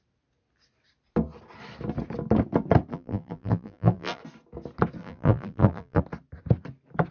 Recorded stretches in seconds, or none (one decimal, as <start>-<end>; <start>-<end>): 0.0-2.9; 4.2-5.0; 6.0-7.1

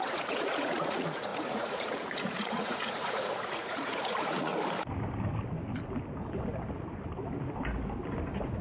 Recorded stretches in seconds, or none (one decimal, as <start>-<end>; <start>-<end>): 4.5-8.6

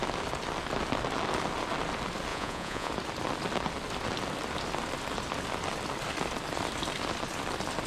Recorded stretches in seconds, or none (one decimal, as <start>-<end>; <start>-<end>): 0.0-2.3; 2.9-7.9

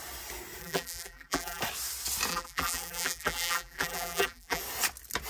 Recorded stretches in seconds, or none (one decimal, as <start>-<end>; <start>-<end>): 0.0-0.6; 1.6-2.3; 4.6-5.3

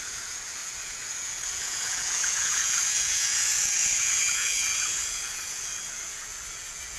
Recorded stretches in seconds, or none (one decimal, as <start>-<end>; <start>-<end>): none